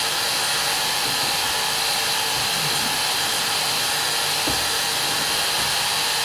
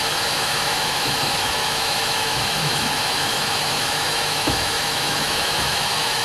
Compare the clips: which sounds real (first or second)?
first